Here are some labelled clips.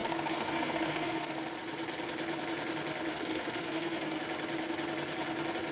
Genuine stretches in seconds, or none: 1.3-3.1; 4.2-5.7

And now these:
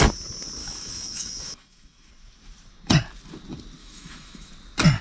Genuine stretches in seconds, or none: 0.0-0.6; 2.1-3.8; 4.5-5.0

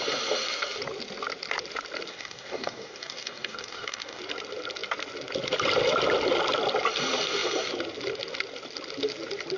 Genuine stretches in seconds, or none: 0.0-2.1; 4.2-9.6

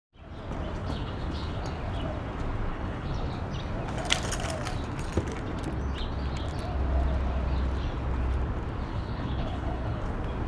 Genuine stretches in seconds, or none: 0.0-0.8; 1.6-2.7; 3.3-8.9; 10.0-10.5

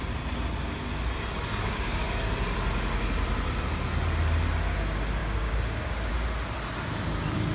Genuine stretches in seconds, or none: 0.0-1.5; 2.0-5.2; 6.1-7.5

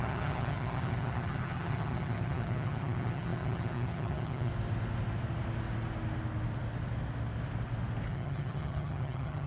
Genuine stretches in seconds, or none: 4.5-8.1

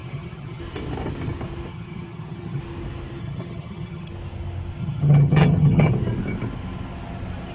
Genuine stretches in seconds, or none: 0.6-1.7; 2.6-3.2; 4.1-4.8; 5.9-7.5

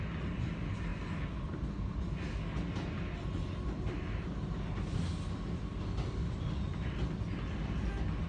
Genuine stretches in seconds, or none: 0.0-8.3